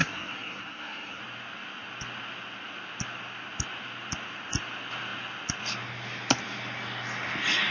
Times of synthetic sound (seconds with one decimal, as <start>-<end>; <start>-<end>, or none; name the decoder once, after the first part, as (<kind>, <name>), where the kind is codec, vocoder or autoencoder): 0.0-1.2 (codec, SNAC)